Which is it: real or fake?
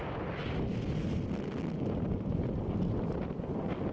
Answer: real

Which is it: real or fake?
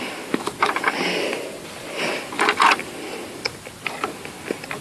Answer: real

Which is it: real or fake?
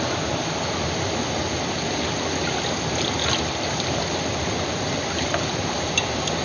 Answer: real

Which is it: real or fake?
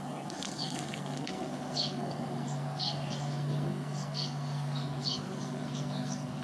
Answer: fake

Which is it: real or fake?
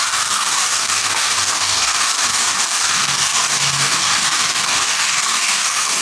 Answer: fake